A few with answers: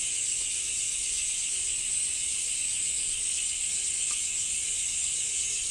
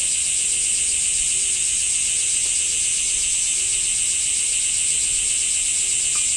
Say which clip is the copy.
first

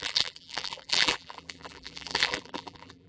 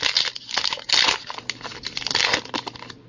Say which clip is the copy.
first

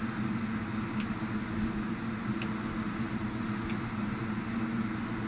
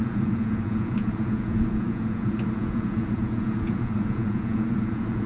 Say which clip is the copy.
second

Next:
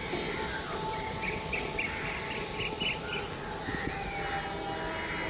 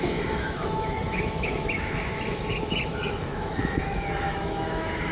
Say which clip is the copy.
second